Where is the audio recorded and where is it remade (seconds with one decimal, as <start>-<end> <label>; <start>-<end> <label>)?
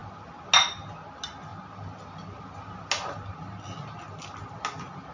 0.0-5.1 recorded